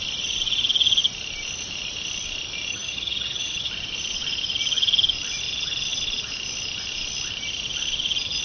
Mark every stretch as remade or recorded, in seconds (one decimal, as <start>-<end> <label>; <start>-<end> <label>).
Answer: 0.0-2.7 recorded; 2.7-3.7 remade; 3.7-8.4 recorded